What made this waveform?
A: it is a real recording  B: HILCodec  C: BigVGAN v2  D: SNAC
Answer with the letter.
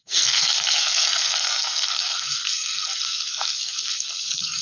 D